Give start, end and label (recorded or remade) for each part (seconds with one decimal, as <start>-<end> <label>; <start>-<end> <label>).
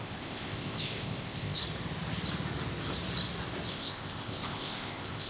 0.0-1.6 remade; 1.6-3.7 recorded; 3.7-5.3 remade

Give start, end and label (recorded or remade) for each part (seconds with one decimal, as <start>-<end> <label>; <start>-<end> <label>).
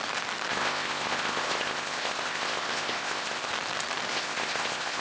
0.0-0.5 recorded; 0.5-3.5 remade; 3.5-4.1 recorded; 4.1-5.0 remade